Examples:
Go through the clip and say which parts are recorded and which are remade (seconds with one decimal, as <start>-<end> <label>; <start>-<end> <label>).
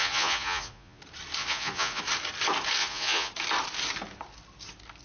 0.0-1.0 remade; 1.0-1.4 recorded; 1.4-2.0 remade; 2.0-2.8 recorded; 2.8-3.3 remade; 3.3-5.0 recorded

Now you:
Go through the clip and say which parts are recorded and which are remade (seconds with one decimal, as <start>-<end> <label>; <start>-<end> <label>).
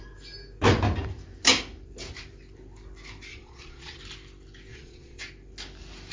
0.0-3.3 recorded; 3.3-4.0 remade; 4.0-4.7 recorded; 4.7-5.2 remade; 5.2-6.1 recorded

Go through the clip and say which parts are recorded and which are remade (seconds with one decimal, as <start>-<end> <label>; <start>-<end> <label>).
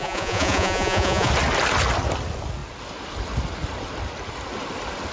0.0-1.3 remade; 1.3-5.1 recorded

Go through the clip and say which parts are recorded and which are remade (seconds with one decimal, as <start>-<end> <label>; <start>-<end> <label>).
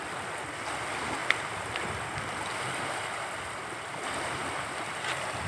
0.0-1.2 recorded; 1.2-2.7 remade; 2.7-5.5 recorded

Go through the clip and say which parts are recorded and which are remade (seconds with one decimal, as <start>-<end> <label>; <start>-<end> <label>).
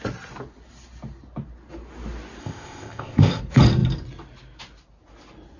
0.0-2.4 recorded; 2.4-3.4 remade; 3.4-5.6 recorded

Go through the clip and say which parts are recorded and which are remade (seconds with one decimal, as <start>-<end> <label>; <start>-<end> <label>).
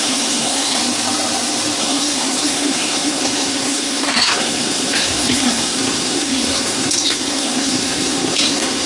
0.0-0.8 remade; 0.8-1.8 recorded; 1.8-8.9 remade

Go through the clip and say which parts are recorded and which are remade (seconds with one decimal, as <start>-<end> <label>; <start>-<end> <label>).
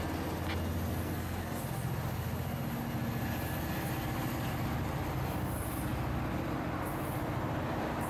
0.0-0.9 recorded; 0.9-1.6 remade; 1.6-8.1 recorded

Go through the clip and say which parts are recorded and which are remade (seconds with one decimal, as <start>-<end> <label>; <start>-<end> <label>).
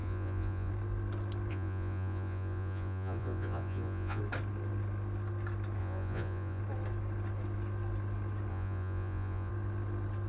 0.0-0.7 remade; 0.7-1.5 recorded; 1.5-4.2 remade; 4.2-5.8 recorded; 5.8-6.6 remade; 6.6-8.5 recorded; 8.5-9.5 remade; 9.5-10.3 recorded